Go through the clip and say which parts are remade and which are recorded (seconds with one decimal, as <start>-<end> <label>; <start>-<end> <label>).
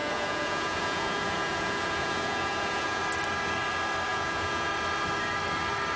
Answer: 0.0-3.0 remade; 3.0-4.1 recorded; 4.1-4.7 remade; 4.7-6.0 recorded